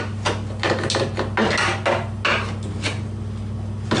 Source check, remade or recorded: recorded